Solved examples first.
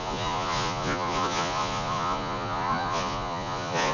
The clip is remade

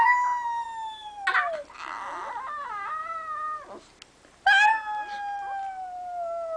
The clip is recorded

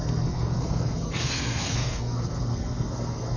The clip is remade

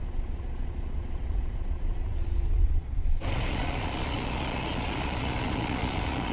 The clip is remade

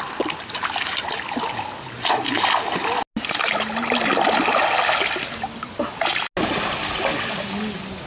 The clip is recorded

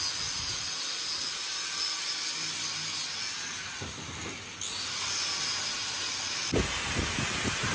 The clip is recorded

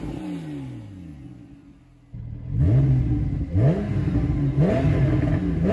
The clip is recorded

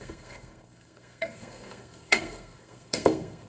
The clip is remade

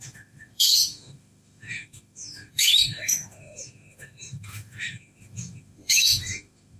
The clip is remade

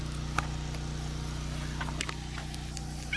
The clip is recorded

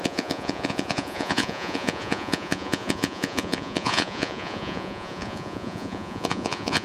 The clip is remade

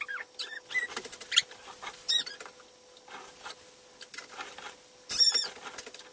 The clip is recorded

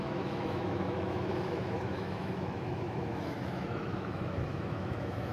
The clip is remade